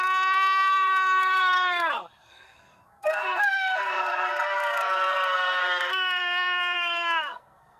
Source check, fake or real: fake